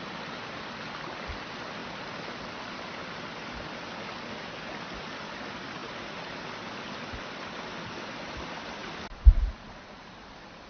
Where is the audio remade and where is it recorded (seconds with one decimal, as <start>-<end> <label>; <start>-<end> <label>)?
0.0-10.7 recorded